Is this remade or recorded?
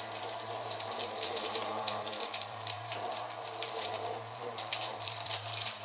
remade